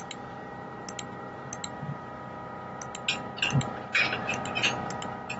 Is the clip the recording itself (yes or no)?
yes